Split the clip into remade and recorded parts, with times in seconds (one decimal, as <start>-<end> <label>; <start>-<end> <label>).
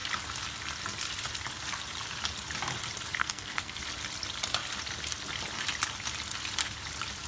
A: 0.0-3.2 recorded; 3.2-3.8 remade; 3.8-7.3 recorded